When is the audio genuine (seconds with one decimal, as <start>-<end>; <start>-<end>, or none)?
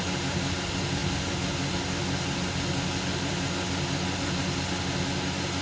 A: 0.0-5.6